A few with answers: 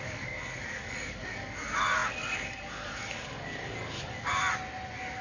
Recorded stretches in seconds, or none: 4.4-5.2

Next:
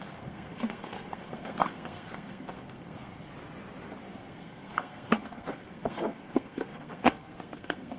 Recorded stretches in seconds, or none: 3.3-4.0

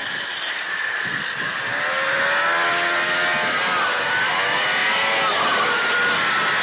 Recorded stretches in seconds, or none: 0.0-6.6

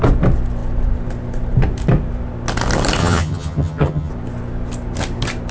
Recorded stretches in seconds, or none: 0.0-3.0; 4.1-5.5

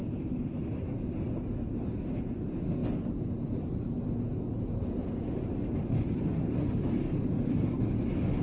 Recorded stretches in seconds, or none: 0.0-8.4

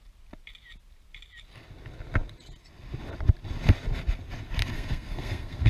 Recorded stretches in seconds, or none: 0.0-4.6

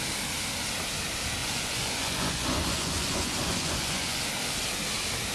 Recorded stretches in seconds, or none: 0.0-1.4; 4.3-5.3